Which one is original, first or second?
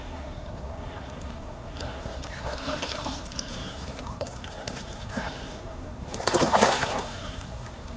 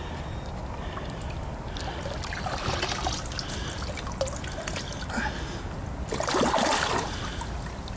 second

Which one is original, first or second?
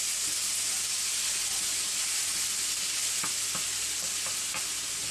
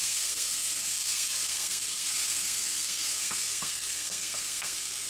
first